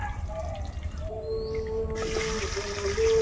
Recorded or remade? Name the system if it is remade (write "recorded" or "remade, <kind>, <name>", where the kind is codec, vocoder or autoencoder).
recorded